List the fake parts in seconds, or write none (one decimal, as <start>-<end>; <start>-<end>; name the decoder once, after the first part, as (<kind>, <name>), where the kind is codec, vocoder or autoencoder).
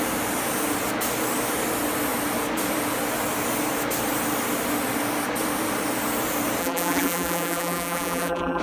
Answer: 6.6-8.6 (vocoder, BigVGAN v2)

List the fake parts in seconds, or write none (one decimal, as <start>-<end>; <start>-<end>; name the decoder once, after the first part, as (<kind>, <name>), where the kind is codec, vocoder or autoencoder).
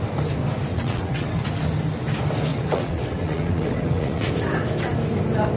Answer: 0.7-1.4 (vocoder, WaveNeXt); 2.5-4.3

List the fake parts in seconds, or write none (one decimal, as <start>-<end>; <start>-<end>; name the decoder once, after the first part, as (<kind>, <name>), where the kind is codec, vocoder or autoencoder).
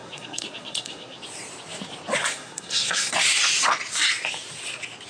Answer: 0.0-1.2 (codec, SNAC); 2.3-3.1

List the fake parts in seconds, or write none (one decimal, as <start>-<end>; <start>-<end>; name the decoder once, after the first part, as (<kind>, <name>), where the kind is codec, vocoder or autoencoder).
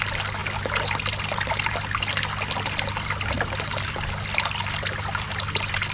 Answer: none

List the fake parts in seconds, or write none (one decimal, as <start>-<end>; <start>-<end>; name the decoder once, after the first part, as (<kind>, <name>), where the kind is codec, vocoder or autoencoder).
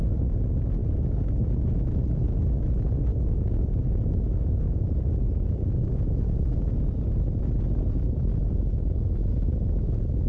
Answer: 3.1-7.2 (vocoder, Vocos)